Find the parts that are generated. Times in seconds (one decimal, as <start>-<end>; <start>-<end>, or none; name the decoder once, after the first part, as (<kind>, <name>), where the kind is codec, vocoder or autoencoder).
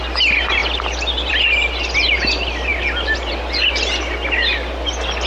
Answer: none